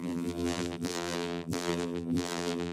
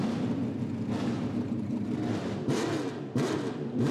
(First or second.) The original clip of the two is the second